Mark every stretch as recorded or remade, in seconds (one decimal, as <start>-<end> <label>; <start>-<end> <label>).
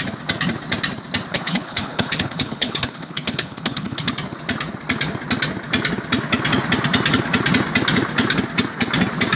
0.0-1.3 recorded; 1.3-4.1 remade; 4.1-9.4 recorded